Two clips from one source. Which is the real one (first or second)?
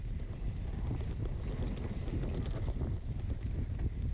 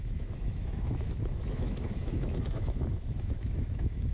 first